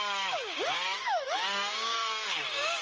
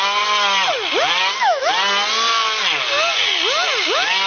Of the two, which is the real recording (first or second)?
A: second